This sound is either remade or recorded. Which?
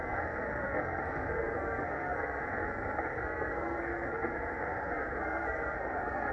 remade